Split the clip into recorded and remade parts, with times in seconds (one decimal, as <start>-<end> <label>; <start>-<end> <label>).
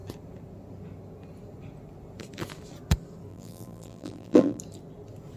0.0-3.3 recorded; 3.3-4.6 remade; 4.6-5.4 recorded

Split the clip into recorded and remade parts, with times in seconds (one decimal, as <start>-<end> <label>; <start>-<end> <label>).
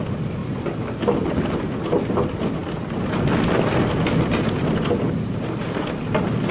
0.0-0.4 remade; 0.4-1.1 recorded; 1.1-2.6 remade; 2.6-6.5 recorded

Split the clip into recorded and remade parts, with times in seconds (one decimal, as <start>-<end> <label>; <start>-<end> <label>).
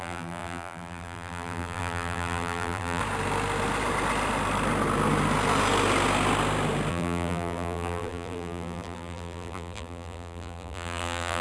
0.0-3.0 remade; 3.0-6.9 recorded; 6.9-11.4 remade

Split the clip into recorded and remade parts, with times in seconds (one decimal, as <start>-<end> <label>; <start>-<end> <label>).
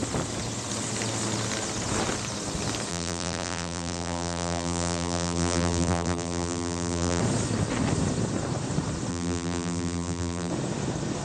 0.0-2.9 recorded; 2.9-7.2 remade; 7.2-9.1 recorded; 9.1-10.5 remade; 10.5-11.2 recorded